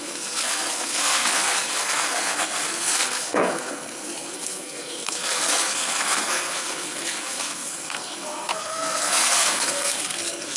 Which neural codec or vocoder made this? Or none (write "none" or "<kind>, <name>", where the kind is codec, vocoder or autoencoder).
codec, SNAC